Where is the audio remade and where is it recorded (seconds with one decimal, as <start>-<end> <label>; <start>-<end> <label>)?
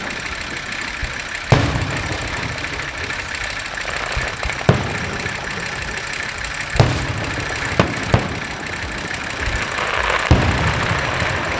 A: 0.0-11.6 recorded